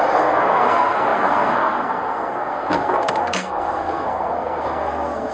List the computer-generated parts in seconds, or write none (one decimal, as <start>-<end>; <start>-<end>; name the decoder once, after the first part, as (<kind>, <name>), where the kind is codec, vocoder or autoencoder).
0.0-5.3 (codec, SNAC)